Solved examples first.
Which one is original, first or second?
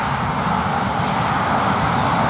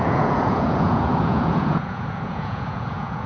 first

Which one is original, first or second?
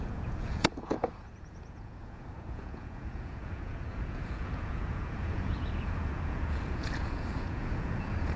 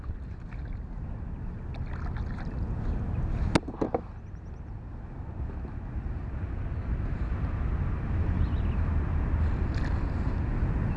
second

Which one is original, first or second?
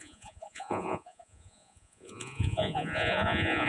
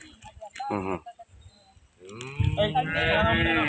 second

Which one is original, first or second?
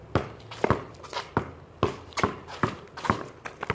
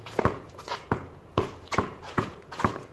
first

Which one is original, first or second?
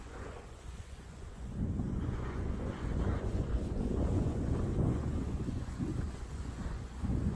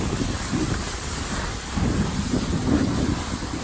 second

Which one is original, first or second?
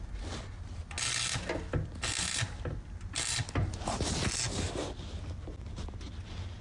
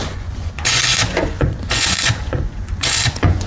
first